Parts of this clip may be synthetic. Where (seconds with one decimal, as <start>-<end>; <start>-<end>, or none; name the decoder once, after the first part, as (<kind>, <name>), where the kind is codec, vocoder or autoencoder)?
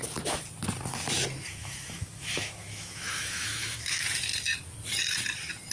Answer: 1.6-4.0 (autoencoder, DAC-VAE)